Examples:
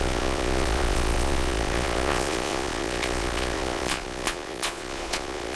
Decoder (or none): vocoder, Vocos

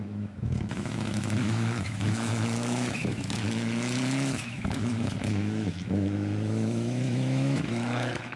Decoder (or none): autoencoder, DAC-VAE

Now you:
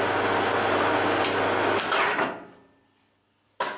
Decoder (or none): none